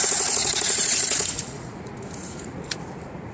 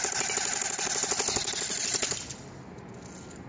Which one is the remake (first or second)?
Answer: first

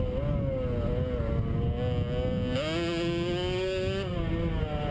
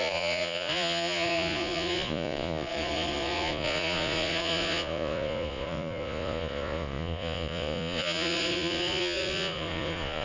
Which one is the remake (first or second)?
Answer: second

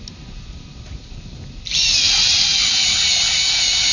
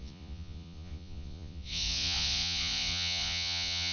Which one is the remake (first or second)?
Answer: second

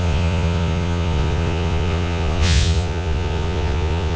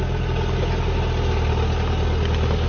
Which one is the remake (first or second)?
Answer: first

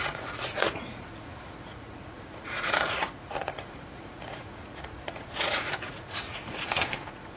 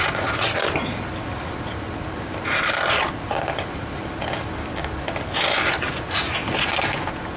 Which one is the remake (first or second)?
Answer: first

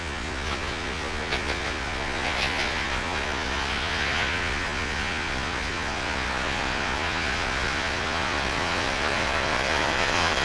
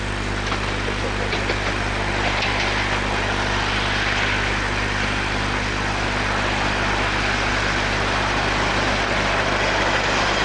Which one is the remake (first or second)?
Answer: first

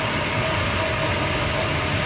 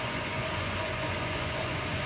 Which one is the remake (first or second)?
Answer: second